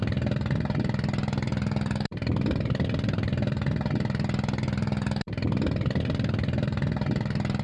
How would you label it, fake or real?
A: fake